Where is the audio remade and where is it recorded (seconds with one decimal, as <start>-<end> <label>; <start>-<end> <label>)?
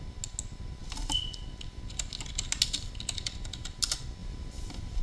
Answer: 0.0-5.0 recorded